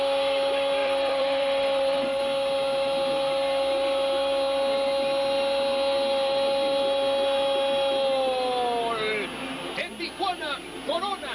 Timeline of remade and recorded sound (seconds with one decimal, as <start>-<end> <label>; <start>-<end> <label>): 0.0-0.8 recorded; 0.8-2.2 remade; 2.2-11.3 recorded